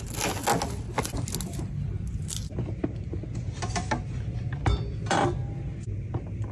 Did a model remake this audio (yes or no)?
no